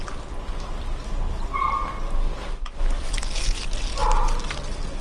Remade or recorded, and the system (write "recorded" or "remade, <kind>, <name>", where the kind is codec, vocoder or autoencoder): recorded